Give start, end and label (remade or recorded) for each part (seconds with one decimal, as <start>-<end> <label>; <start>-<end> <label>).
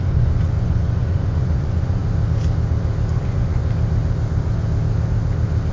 0.0-2.0 remade; 2.0-3.2 recorded; 3.2-3.6 remade; 3.6-5.7 recorded